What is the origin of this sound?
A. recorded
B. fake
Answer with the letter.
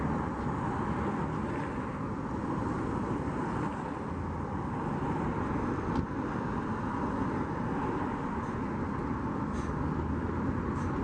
A